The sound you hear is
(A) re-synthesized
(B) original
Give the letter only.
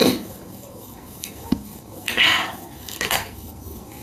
A